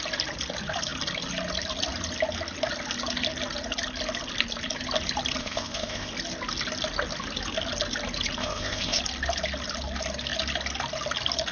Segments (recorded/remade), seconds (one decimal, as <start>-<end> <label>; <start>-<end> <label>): 0.0-5.4 recorded; 5.4-6.1 remade; 6.1-8.4 recorded; 8.4-9.0 remade; 9.0-11.5 recorded